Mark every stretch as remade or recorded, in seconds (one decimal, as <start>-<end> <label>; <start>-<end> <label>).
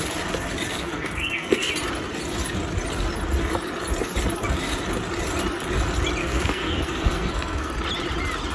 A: 0.0-0.7 recorded; 0.7-1.7 remade; 1.7-6.2 recorded; 6.2-7.7 remade; 7.7-8.5 recorded